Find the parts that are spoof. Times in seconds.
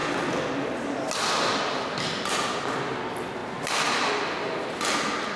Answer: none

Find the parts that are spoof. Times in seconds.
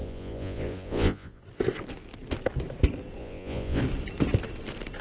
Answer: 0.0-1.4 (vocoder, Vocos); 3.2-3.8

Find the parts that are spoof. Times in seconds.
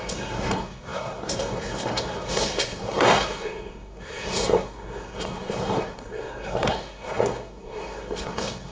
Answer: 0.0-8.7 (codec, SNAC)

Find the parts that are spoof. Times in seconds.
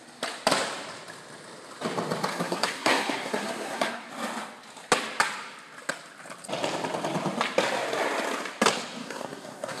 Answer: 2.3-4.1 (codec, SNAC); 9.0-9.8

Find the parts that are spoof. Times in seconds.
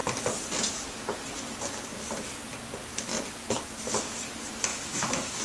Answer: 4.7-5.4 (autoencoder, DAC-VAE)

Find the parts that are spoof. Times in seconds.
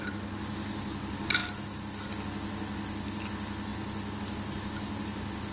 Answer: none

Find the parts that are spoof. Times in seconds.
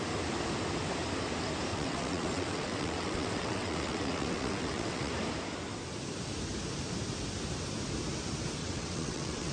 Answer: 1.7-5.1 (vocoder, WaveNeXt); 8.6-9.5